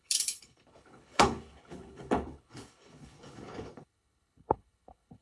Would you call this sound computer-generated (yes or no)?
yes